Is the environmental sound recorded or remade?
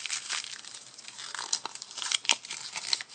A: recorded